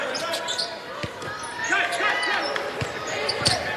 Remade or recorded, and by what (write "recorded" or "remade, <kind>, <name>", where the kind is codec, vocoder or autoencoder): recorded